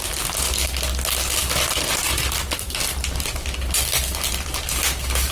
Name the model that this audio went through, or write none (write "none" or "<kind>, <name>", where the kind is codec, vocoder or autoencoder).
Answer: none